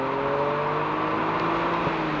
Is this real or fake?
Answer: real